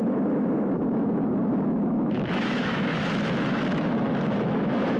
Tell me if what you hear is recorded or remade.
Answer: remade